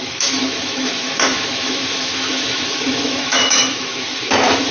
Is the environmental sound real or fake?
fake